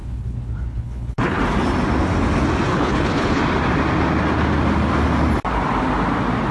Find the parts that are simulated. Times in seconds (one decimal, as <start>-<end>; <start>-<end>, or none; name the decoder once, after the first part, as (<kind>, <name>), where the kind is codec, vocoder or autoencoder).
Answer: 0.0-1.4 (codec, HILCodec); 2.7-3.4